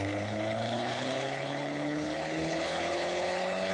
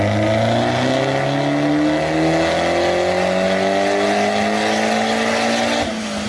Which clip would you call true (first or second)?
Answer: second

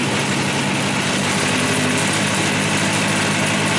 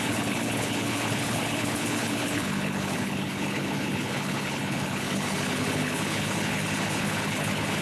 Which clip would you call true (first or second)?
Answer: first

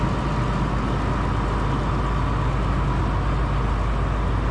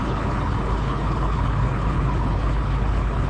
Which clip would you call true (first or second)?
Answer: first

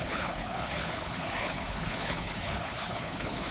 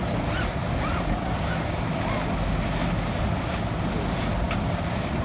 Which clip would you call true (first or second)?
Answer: second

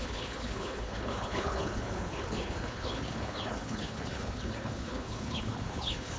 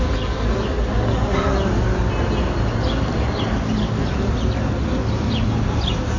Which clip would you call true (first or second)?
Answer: second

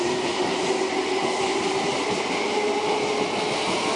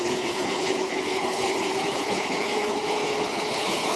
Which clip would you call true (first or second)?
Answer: first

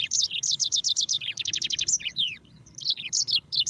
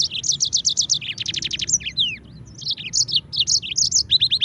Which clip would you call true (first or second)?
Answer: second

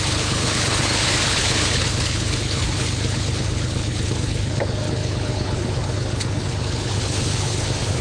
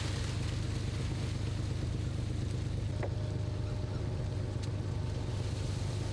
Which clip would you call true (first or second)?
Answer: second